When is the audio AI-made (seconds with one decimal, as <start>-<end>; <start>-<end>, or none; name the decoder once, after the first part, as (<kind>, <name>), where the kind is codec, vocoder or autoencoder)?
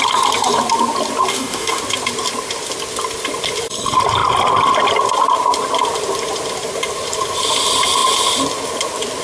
1.3-1.8 (codec, DAC)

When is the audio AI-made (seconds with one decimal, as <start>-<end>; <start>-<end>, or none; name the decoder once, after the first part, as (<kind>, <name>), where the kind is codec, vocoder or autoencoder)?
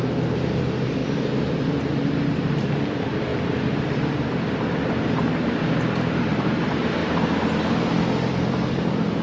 0.0-3.3 (vocoder, BigVGAN v2); 6.1-7.0; 8.6-9.2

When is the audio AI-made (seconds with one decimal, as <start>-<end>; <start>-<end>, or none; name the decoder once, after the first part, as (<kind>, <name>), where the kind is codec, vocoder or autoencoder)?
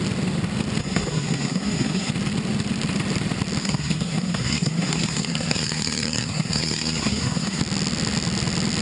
0.8-2.1 (codec, SNAC); 3.6-7.6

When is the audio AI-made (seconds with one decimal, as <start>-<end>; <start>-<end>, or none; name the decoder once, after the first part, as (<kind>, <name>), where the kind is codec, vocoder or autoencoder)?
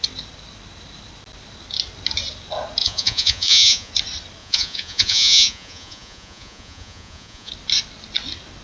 2.8-3.9 (vocoder, Vocos); 4.4-7.5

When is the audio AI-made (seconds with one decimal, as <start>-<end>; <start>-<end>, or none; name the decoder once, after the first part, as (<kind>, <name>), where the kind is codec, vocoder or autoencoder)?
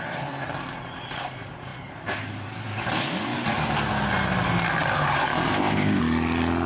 5.5-6.0 (codec, ZipCodec)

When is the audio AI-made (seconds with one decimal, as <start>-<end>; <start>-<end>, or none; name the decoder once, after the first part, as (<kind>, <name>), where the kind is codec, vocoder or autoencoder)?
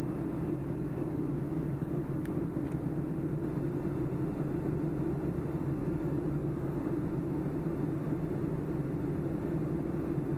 0.6-2.3 (codec, DAC); 5.8-6.9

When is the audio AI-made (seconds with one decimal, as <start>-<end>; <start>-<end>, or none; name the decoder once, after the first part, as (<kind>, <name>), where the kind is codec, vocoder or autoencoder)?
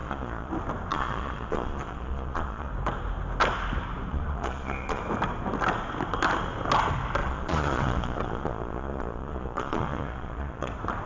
0.0-0.5 (vocoder, Vocos); 0.9-2.7; 4.1-5.0; 7.2-10.7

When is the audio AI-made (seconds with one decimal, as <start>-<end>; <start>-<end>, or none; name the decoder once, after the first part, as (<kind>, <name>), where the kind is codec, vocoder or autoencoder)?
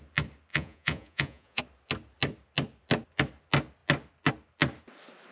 0.5-1.6 (vocoder, Vocos)